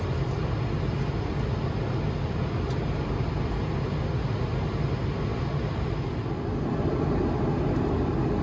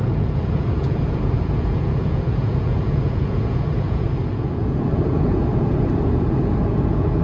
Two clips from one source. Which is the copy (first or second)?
second